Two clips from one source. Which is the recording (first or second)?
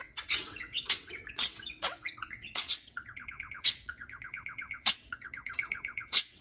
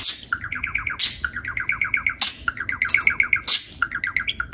second